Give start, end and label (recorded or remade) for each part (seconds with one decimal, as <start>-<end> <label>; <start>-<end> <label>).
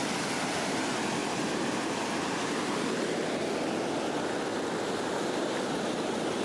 0.0-6.4 recorded